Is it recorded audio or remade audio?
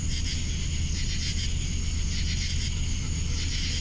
recorded